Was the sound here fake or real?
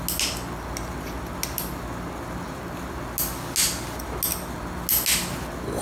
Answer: real